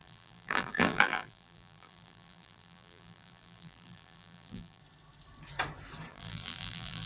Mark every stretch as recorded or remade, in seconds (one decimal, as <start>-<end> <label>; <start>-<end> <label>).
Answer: 0.0-4.8 remade; 4.8-6.1 recorded; 6.1-7.1 remade